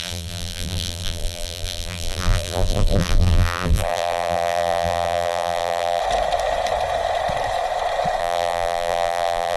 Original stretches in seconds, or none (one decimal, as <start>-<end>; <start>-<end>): 6.0-8.2